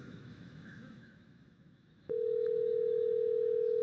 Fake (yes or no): yes